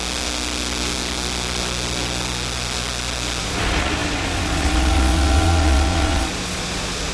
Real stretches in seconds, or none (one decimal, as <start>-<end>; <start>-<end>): 0.0-3.4